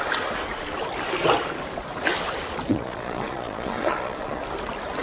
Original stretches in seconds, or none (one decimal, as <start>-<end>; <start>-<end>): 0.0-2.7; 4.4-5.0